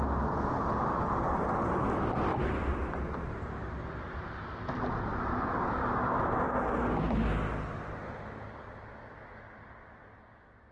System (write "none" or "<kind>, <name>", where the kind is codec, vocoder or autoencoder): none